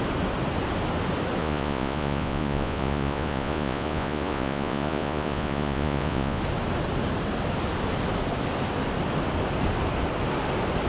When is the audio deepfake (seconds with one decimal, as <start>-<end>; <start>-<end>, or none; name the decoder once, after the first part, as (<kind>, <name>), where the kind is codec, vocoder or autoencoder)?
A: 1.4-6.4 (vocoder, Vocos)